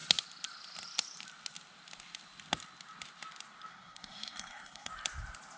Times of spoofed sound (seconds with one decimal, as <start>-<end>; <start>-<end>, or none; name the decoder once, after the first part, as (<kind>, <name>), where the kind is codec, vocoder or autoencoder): 3.7-4.9 (codec, SNAC)